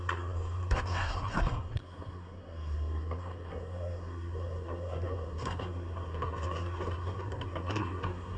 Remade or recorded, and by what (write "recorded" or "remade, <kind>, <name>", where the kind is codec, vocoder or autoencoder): remade, codec, SNAC